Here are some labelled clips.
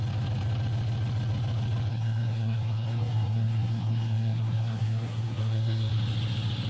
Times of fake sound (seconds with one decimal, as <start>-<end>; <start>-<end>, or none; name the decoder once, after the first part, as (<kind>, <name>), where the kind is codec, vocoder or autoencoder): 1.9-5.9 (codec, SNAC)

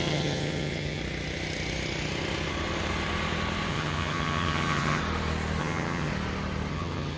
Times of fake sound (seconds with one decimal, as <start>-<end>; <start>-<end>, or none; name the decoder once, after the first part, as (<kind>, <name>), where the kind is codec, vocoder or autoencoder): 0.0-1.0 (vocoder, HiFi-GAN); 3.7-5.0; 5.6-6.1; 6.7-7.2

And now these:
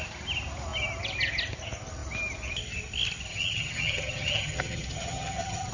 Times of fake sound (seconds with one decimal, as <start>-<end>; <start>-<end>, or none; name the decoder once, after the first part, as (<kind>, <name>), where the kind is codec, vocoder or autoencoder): 3.3-5.7 (vocoder, HiFi-GAN)

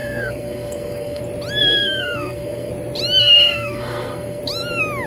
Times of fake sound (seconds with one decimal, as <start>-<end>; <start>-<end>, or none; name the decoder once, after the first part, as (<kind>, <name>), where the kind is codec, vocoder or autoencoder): 0.0-1.2 (codec, SNAC); 1.6-2.7; 3.2-4.4

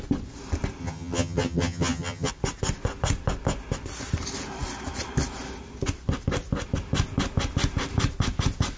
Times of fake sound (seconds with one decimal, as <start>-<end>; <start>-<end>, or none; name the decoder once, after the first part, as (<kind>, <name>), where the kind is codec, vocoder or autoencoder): 0.8-2.3 (vocoder, HiFi-GAN)